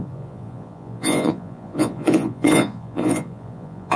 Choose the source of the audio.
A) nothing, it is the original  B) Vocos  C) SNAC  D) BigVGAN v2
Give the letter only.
B